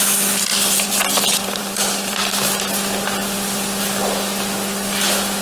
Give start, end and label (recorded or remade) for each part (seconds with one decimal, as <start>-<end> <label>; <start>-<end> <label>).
0.0-0.5 recorded; 0.5-2.7 remade; 2.7-3.2 recorded; 3.2-3.8 remade; 3.8-5.4 recorded